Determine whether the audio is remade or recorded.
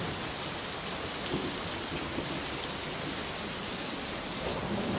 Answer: recorded